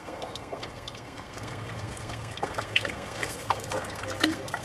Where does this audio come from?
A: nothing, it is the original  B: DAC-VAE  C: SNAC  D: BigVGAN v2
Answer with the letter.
C